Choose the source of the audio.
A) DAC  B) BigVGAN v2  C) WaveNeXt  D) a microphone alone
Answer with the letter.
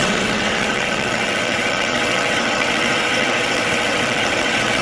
C